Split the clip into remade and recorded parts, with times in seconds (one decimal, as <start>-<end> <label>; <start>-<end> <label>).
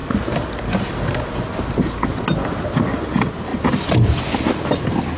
0.0-5.2 recorded